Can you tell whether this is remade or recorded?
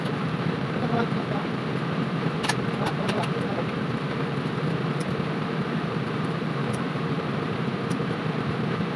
remade